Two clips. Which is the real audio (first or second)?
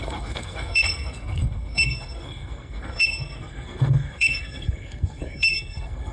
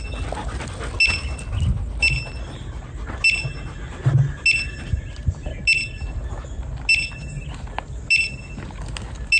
second